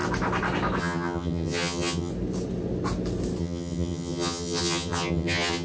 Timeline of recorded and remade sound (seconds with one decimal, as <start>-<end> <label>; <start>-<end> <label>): 0.0-0.8 recorded; 0.8-2.1 remade; 2.1-3.4 recorded; 3.4-5.6 remade